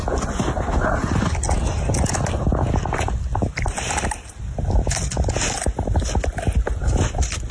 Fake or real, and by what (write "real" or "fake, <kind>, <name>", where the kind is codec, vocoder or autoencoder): real